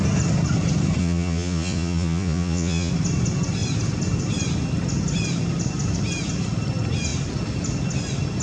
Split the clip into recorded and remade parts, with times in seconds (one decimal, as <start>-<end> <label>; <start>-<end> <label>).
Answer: 0.0-1.0 recorded; 1.0-2.9 remade; 2.9-8.4 recorded